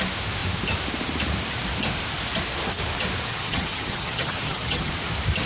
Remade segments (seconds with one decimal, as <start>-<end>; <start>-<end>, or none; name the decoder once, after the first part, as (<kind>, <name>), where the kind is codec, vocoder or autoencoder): 3.3-4.9 (vocoder, HiFi-GAN)